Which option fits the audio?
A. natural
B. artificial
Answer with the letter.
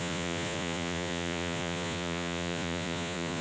B